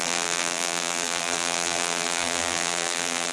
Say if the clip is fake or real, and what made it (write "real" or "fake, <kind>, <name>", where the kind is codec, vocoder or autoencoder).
fake, vocoder, BigVGAN v2